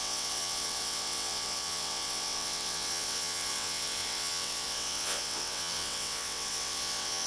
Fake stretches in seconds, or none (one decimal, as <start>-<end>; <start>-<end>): 0.0-7.3